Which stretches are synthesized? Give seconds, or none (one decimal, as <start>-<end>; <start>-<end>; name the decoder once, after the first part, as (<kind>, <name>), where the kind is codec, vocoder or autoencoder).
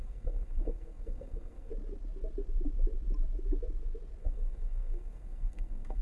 0.0-1.7 (codec, SNAC); 4.2-6.0